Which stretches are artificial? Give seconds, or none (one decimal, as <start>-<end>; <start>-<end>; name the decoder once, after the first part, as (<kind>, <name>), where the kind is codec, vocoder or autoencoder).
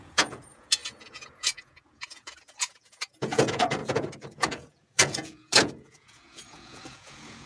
0.0-7.5 (vocoder, Vocos)